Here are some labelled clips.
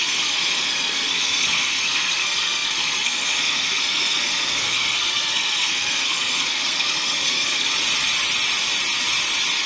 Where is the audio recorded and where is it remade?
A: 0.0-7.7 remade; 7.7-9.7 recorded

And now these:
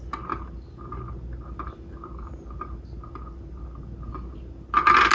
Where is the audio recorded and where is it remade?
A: 0.0-5.1 recorded

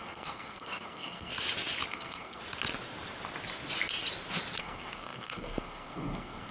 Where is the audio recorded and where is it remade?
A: 0.0-1.3 remade; 1.3-1.9 recorded; 1.9-2.4 remade; 2.4-4.6 recorded; 4.6-6.5 remade

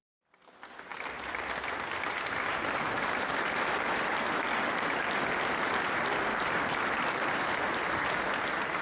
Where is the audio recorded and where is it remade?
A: 0.0-8.8 recorded